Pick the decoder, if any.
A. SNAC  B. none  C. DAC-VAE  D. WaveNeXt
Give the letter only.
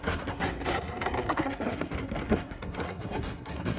A